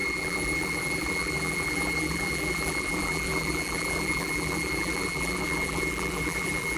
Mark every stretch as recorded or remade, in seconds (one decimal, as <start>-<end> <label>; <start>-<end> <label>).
0.0-6.8 remade

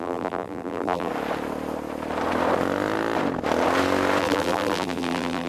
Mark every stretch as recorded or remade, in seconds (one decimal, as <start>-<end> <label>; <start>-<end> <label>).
0.0-1.1 remade; 1.1-4.2 recorded; 4.2-5.5 remade

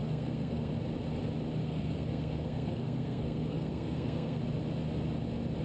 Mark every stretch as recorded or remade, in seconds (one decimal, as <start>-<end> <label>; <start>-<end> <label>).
0.0-0.7 remade; 0.7-1.6 recorded; 1.6-4.4 remade; 4.4-5.6 recorded

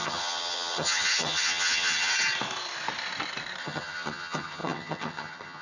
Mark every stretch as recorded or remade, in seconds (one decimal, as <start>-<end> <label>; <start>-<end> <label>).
0.0-2.1 remade; 2.1-3.6 recorded; 3.6-5.6 remade

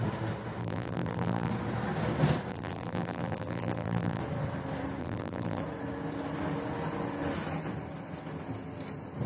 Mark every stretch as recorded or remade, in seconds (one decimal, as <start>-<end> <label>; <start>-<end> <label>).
0.0-0.6 recorded; 0.6-1.5 remade; 1.5-2.5 recorded; 2.5-4.2 remade; 4.2-5.0 recorded; 5.0-5.6 remade; 5.6-9.3 recorded

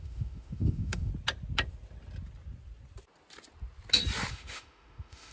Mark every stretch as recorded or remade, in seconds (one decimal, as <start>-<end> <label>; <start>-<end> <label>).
0.0-1.1 remade; 1.1-4.3 recorded; 4.3-5.3 remade

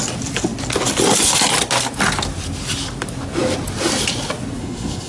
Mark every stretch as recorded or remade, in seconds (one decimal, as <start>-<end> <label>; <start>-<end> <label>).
0.0-4.6 recorded; 4.6-5.1 remade

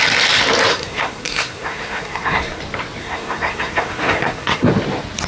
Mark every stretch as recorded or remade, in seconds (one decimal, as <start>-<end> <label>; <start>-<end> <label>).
0.0-0.7 recorded; 0.7-2.6 remade; 2.6-3.0 recorded; 3.0-4.7 remade; 4.7-5.3 recorded